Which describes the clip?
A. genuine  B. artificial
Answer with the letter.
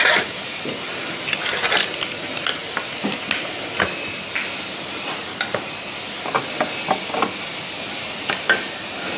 A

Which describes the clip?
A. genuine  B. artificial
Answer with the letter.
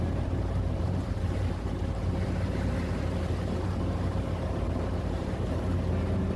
B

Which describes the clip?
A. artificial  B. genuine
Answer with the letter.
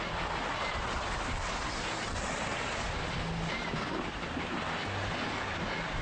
B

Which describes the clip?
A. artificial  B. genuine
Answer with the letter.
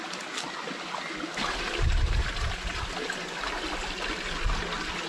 B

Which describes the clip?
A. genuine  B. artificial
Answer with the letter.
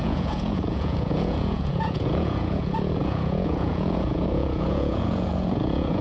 B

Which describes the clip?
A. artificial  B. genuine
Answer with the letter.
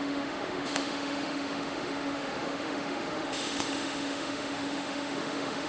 A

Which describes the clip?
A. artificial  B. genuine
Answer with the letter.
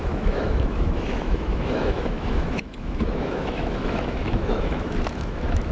A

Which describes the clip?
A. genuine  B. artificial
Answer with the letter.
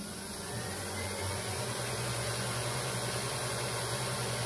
B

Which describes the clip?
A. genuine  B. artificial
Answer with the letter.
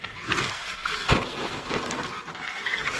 B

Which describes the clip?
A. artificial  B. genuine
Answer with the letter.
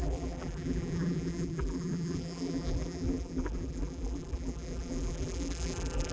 A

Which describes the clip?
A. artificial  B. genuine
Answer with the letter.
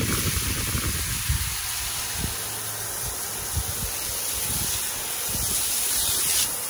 B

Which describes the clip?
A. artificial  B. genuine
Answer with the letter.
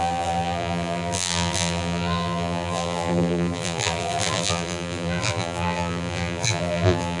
A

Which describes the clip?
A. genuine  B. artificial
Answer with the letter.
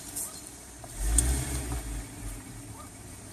A